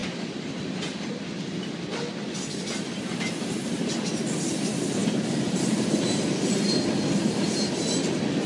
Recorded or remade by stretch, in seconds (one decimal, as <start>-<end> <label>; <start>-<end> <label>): 0.0-8.5 recorded